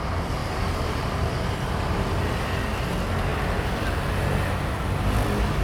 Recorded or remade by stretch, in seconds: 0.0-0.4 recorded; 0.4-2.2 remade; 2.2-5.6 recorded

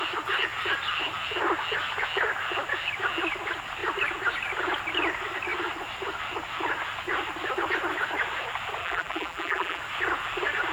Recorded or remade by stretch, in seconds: 0.0-8.8 recorded; 8.8-9.8 remade; 9.8-10.7 recorded

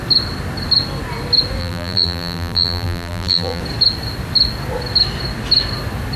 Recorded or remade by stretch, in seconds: 0.0-1.6 recorded; 1.6-3.6 remade; 3.6-6.2 recorded